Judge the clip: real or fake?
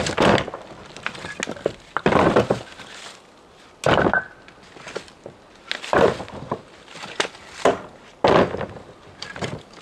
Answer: real